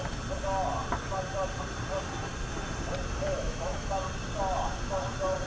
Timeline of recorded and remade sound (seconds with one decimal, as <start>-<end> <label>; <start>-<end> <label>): 0.0-3.3 recorded; 3.3-3.9 remade; 3.9-5.5 recorded